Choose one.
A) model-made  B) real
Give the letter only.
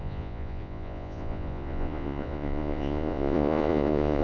A